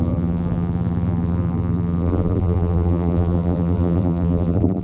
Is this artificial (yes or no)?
yes